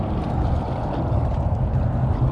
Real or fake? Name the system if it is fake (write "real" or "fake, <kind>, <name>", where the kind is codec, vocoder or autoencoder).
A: real